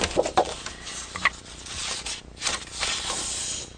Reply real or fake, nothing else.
real